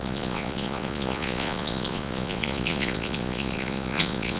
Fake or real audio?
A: fake